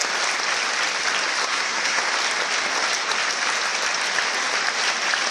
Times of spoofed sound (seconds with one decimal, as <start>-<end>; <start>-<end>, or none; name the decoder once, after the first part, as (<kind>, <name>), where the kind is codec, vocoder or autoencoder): 1.4-2.0 (codec, SNAC)